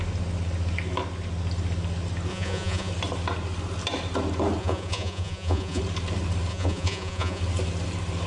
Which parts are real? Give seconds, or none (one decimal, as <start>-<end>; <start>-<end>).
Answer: 0.0-2.3; 2.9-4.6; 5.8-6.5; 7.4-8.3